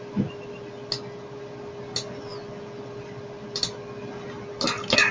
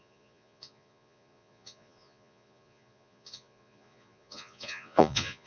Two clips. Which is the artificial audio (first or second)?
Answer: second